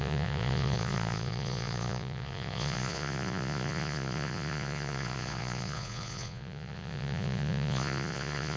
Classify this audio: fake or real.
fake